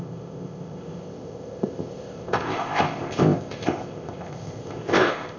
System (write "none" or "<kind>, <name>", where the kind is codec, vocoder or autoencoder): codec, ZipCodec